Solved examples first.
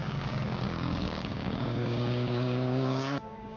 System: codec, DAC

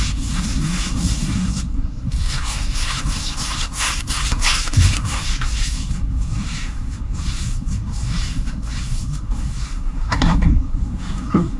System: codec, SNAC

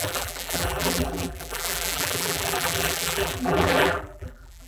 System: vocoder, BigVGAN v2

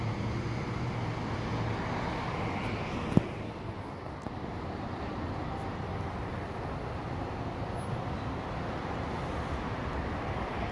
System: none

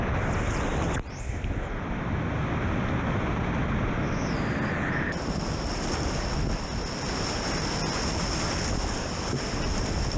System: none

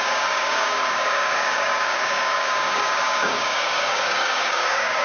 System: codec, DAC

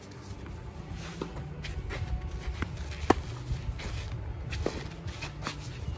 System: none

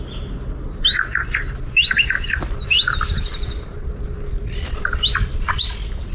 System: none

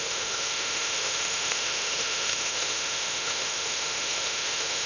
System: autoencoder, DAC-VAE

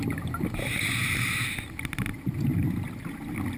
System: none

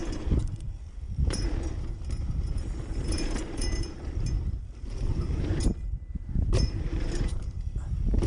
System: vocoder, BigVGAN v2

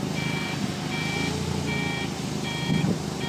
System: none